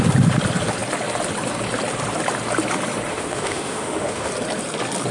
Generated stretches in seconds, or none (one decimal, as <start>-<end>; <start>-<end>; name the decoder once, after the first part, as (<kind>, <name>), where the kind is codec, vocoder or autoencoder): 3.1-4.3 (autoencoder, DAC-VAE)